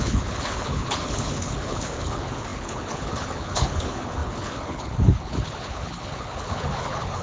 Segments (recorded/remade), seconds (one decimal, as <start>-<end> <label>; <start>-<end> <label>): 0.0-7.2 remade